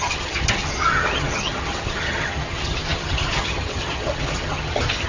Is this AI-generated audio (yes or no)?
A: yes